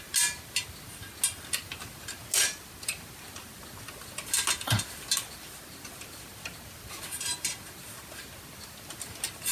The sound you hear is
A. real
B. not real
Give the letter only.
A